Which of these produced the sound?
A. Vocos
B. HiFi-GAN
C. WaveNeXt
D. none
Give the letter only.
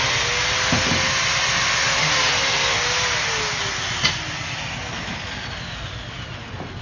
D